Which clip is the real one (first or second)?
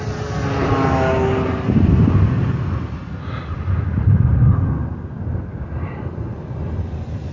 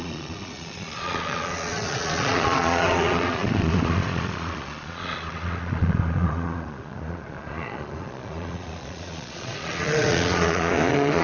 first